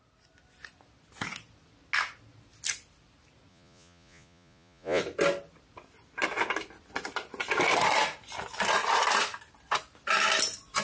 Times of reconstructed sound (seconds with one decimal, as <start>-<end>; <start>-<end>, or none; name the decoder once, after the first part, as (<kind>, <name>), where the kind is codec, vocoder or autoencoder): 3.5-5.0 (vocoder, Vocos)

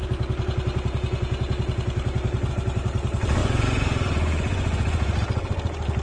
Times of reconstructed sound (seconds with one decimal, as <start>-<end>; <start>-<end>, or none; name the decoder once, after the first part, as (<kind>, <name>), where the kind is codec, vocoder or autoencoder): 3.4-5.2 (vocoder, Vocos)

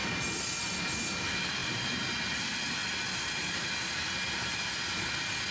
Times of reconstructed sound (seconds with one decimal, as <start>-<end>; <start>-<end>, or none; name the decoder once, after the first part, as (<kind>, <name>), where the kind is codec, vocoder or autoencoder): 1.6-2.1 (vocoder, BigVGAN v2)

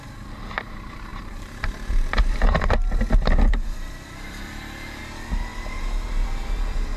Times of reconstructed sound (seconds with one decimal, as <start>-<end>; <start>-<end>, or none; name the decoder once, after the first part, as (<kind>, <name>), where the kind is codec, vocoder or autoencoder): 1.1-5.0 (vocoder, BigVGAN v2)

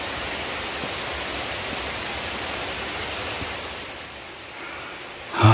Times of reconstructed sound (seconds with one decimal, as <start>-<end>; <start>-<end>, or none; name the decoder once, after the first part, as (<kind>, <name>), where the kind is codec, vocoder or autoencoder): 1.3-4.4 (vocoder, BigVGAN v2)